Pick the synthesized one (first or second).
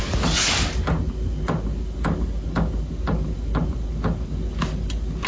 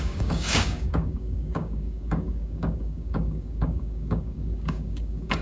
second